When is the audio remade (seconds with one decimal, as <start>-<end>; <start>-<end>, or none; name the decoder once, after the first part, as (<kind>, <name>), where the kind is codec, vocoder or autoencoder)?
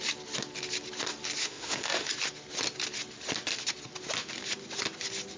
1.4-2.1 (autoencoder, DAC-VAE)